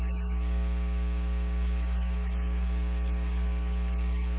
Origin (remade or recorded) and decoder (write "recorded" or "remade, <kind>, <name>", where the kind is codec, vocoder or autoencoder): remade, codec, DAC